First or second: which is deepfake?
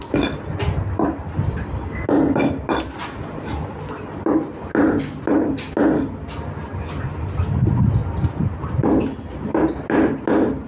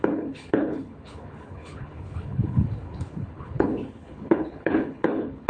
second